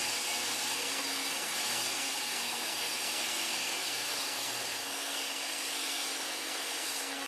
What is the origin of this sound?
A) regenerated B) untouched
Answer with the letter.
A